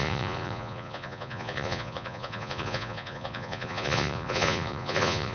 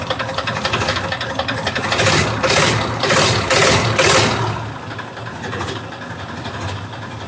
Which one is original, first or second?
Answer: second